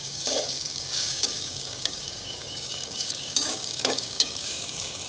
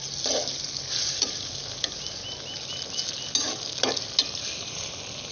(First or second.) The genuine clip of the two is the second